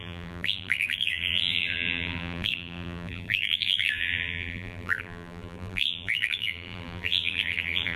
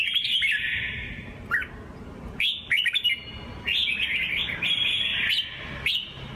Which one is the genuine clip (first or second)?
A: second